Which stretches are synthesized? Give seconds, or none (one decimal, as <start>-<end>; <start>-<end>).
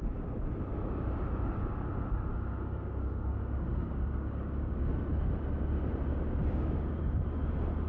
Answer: 0.7-1.9; 2.3-4.9; 6.4-7.0